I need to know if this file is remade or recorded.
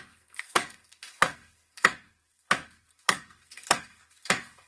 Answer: remade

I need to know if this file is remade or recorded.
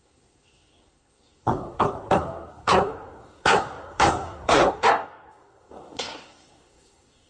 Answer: remade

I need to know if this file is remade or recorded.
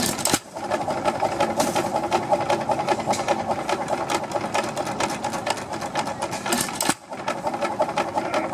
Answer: recorded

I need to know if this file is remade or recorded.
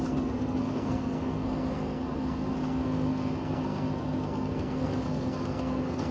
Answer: remade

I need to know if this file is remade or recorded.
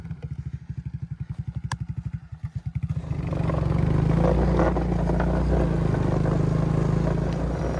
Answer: recorded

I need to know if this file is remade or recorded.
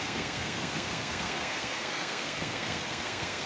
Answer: remade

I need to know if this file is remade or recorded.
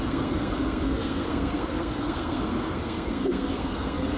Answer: remade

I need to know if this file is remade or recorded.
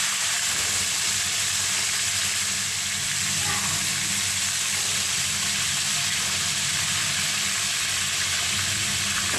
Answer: recorded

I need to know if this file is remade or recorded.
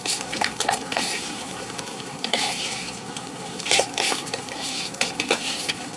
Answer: remade